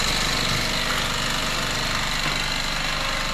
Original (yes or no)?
yes